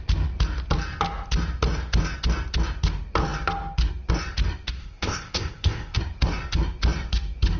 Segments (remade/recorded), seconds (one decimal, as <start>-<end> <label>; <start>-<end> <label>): 0.0-4.8 recorded; 4.8-6.0 remade; 6.0-7.6 recorded